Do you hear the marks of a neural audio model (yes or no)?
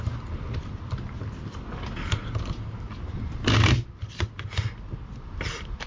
no